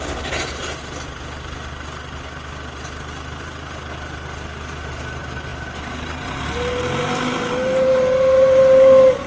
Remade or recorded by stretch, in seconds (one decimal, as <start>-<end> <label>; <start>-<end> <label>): 0.0-9.3 recorded